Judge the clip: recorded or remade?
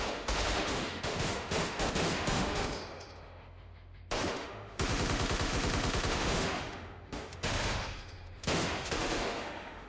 remade